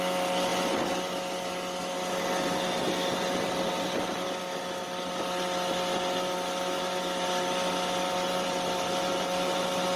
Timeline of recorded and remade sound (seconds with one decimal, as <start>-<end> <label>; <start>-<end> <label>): 0.0-10.0 recorded